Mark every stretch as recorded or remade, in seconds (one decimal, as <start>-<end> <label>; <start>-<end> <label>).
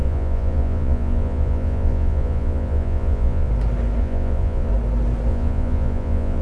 0.0-3.5 remade; 3.5-4.0 recorded; 4.0-4.7 remade; 4.7-5.3 recorded; 5.3-6.4 remade